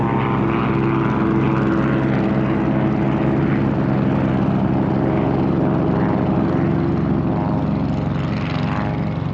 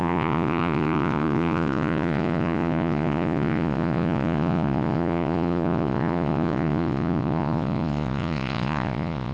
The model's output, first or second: second